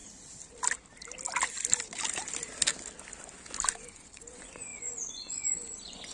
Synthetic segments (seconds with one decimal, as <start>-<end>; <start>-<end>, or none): 3.7-6.1